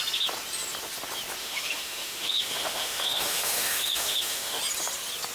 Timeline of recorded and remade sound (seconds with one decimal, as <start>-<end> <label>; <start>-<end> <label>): 0.0-1.4 recorded; 1.4-4.6 remade; 4.6-5.3 recorded

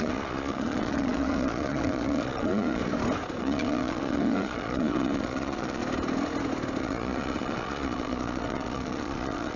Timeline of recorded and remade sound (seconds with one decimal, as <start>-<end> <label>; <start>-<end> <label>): 0.0-2.8 remade; 2.8-3.4 recorded; 3.4-5.8 remade; 5.8-6.8 recorded; 6.8-9.6 remade

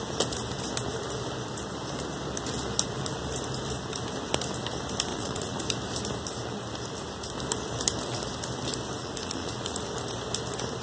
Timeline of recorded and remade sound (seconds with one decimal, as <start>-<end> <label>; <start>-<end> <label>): 0.0-5.1 recorded; 5.1-5.6 remade; 5.6-9.0 recorded; 9.0-9.8 remade; 9.8-10.8 recorded

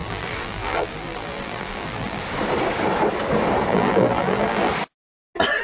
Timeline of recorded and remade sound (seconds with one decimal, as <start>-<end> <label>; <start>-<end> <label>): 0.0-2.2 remade; 2.2-3.7 recorded; 3.7-4.7 remade; 4.7-5.6 recorded

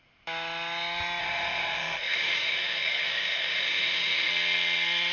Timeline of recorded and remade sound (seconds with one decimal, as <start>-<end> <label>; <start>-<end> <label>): 0.0-1.2 recorded; 1.2-4.3 remade; 4.3-5.1 recorded

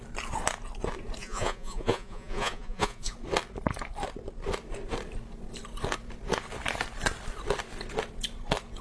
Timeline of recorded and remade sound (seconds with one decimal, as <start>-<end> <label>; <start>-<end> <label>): 0.0-1.2 recorded; 1.2-3.1 remade; 3.1-8.8 recorded